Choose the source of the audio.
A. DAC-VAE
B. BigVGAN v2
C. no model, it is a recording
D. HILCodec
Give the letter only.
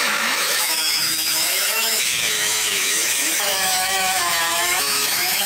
A